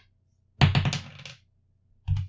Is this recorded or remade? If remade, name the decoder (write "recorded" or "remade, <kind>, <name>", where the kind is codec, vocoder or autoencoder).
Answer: recorded